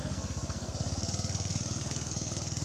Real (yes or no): no